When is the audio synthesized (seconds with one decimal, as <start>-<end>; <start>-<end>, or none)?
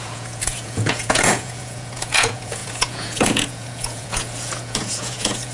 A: 0.0-5.5